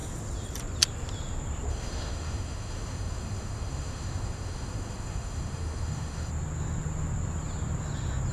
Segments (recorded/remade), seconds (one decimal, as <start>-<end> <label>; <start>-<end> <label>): 0.0-1.7 recorded; 1.7-6.3 remade; 6.3-8.3 recorded